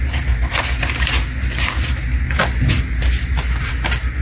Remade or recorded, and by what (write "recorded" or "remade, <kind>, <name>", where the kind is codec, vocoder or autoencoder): recorded